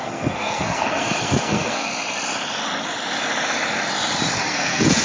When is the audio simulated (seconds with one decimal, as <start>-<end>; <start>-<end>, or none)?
0.0-1.9; 4.4-5.0